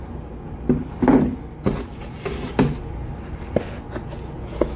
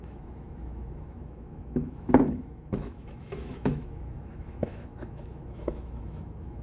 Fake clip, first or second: second